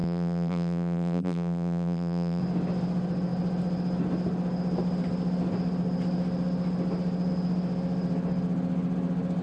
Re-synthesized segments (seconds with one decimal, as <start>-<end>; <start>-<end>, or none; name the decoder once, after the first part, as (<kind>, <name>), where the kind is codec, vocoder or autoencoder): 0.0-2.4 (vocoder, BigVGAN v2)